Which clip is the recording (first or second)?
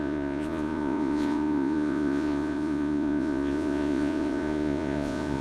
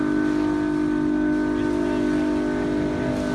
second